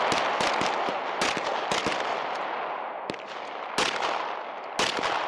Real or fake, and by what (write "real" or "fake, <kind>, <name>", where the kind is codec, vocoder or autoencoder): real